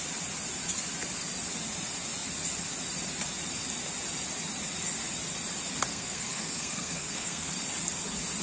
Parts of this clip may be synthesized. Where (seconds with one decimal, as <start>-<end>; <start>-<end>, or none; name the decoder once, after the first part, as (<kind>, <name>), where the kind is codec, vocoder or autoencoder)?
5.9-7.5 (codec, SNAC)